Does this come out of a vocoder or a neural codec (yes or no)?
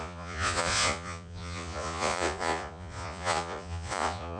yes